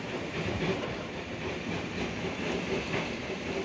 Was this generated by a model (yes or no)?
yes